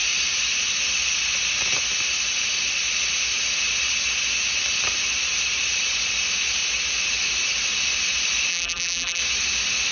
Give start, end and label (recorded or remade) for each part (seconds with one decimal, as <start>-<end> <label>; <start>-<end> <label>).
0.0-8.5 recorded; 8.5-9.2 remade; 9.2-9.9 recorded